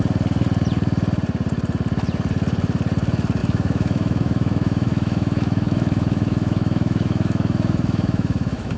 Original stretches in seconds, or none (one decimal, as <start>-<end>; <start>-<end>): 0.0-3.4